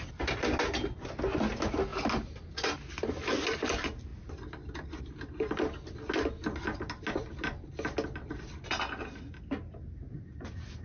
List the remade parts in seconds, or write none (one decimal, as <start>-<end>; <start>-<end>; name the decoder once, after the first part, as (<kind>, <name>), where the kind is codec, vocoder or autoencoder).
none